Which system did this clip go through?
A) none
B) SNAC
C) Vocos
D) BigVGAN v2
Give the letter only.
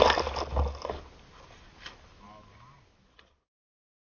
A